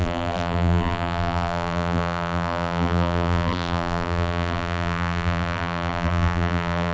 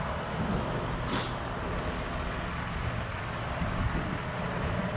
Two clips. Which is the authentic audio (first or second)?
second